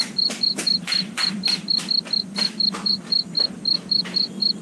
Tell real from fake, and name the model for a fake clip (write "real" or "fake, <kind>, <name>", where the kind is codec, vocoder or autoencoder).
fake, vocoder, BigVGAN v2